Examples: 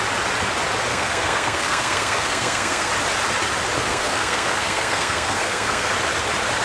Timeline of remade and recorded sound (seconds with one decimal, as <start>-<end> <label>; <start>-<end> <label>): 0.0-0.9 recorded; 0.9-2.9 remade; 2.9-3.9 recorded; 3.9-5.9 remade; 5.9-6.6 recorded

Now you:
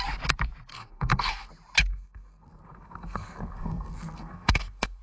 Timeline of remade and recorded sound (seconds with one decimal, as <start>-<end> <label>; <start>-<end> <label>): 0.0-0.7 recorded; 0.7-1.5 remade; 1.5-1.9 recorded; 1.9-5.0 remade

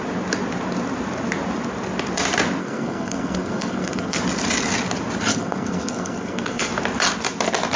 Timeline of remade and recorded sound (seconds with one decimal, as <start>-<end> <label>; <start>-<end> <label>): 0.0-2.6 recorded; 2.6-4.2 remade; 4.2-5.3 recorded; 5.3-6.7 remade; 6.7-7.8 recorded

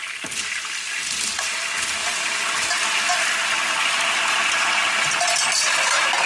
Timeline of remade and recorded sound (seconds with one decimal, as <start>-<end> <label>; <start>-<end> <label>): 0.0-6.3 recorded